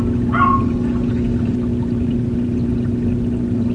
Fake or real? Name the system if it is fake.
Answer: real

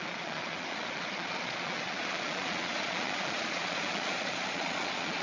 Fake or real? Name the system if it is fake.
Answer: fake, vocoder, Vocos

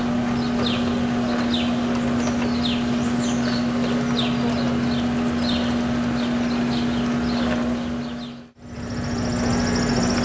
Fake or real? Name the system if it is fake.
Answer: real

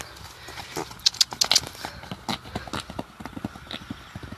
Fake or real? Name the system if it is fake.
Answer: real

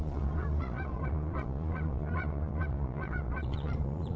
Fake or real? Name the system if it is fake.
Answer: fake, vocoder, Vocos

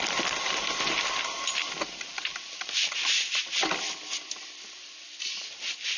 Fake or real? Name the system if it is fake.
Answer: real